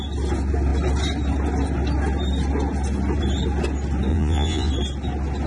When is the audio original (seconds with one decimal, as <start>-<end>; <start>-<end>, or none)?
0.0-4.1; 4.7-5.5